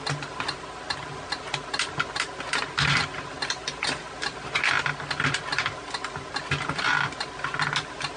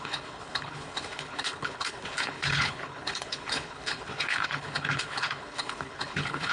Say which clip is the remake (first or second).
second